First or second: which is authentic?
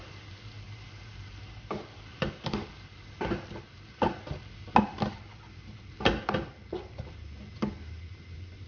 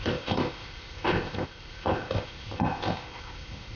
first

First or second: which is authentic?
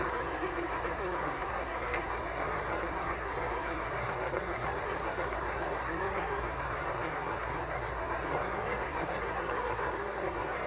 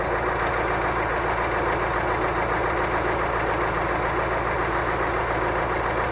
second